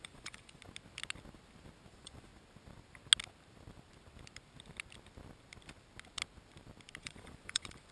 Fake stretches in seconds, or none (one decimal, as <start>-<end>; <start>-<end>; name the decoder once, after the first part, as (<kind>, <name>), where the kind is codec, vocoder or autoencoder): 0.0-0.6 (vocoder, Vocos); 1.9-2.3; 7.0-7.9